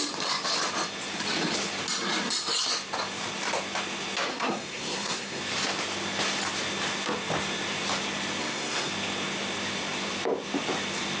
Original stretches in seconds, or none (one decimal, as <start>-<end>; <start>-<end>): 0.0-4.3; 5.4-8.4; 8.9-11.2